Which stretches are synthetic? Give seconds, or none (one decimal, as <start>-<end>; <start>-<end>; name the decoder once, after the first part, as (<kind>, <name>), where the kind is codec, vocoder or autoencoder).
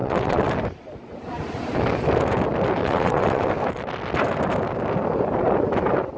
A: 0.0-0.5 (vocoder, WaveNeXt); 2.8-3.5